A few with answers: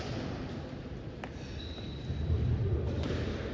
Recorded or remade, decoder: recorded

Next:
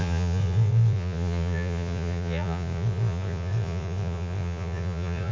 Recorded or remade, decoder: remade, vocoder, Vocos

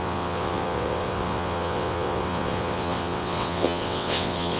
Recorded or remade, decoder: remade, vocoder, WaveNeXt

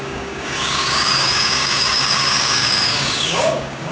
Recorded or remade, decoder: remade, codec, DAC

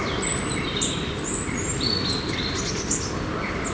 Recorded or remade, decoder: recorded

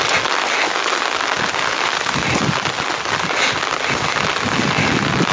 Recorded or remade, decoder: recorded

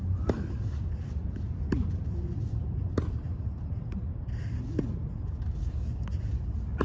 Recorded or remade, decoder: remade, vocoder, BigVGAN v2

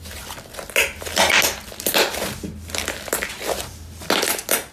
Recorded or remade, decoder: recorded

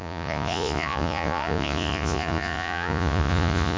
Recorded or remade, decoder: remade, vocoder, Vocos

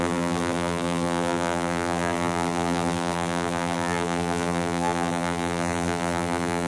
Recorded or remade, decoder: remade, vocoder, BigVGAN v2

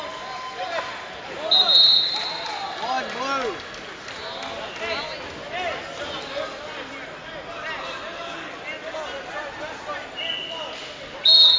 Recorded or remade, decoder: recorded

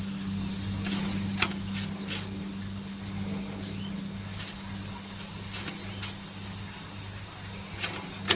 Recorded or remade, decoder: recorded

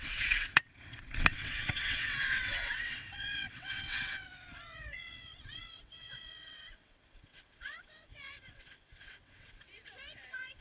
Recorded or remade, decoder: remade, vocoder, WaveNeXt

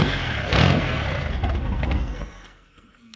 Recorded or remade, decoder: remade, codec, SNAC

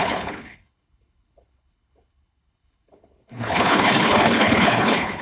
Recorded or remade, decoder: remade, codec, HILCodec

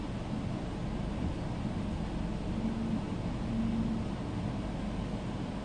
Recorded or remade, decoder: recorded